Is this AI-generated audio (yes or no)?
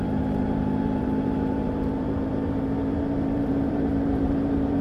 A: yes